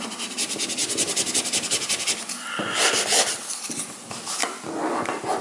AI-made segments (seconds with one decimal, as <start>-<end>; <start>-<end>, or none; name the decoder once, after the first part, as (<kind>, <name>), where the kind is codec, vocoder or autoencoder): none